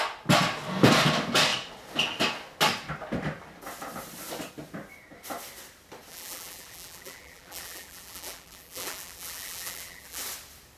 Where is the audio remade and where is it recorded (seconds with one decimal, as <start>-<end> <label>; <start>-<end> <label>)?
0.0-6.1 recorded; 6.1-10.2 remade; 10.2-10.8 recorded

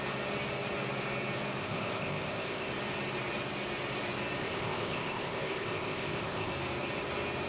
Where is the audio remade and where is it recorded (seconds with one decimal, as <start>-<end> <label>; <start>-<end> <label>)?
0.0-1.6 recorded; 1.6-2.7 remade; 2.7-4.4 recorded; 4.4-6.5 remade; 6.5-7.5 recorded

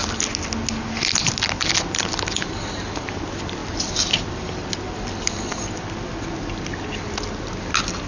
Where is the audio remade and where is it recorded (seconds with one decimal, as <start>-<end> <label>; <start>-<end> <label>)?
0.0-8.1 recorded

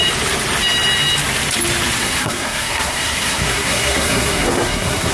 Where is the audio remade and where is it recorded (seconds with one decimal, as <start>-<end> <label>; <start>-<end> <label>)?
0.0-2.0 recorded; 2.0-5.1 remade

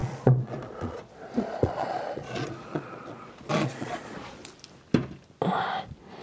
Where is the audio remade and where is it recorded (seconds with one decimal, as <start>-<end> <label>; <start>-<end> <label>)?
0.0-4.4 remade; 4.4-6.2 recorded

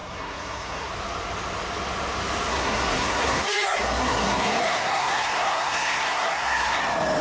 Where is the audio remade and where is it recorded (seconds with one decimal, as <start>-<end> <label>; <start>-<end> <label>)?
0.0-0.9 remade; 0.9-2.5 recorded; 2.5-6.8 remade; 6.8-7.2 recorded

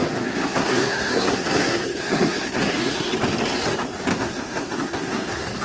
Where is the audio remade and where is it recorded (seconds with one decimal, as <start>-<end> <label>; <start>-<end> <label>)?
0.0-3.1 remade; 3.1-4.1 recorded; 4.1-5.6 remade

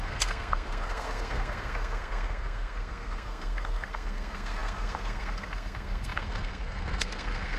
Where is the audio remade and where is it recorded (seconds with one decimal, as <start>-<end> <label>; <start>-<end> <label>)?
0.0-7.6 remade